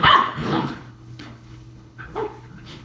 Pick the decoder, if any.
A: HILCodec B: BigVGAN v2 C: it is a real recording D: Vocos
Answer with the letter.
A